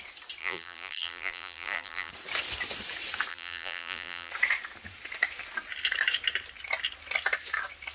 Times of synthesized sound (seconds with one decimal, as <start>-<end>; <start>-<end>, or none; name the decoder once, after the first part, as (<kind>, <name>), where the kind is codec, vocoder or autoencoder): 0.4-2.1 (vocoder, BigVGAN v2); 3.3-4.3